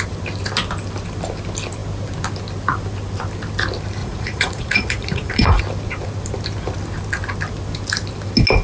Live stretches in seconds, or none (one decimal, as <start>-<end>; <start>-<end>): 0.0-4.0; 5.6-8.6